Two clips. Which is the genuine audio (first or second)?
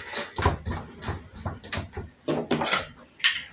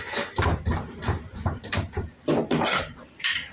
first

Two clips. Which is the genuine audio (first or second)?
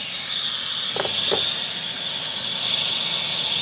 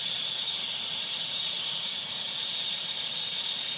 first